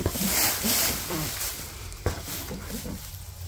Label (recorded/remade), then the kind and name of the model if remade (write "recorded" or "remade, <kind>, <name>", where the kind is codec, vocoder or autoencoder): remade, vocoder, BigVGAN v2